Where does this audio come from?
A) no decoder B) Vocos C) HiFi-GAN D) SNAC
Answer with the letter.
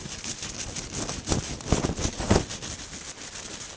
A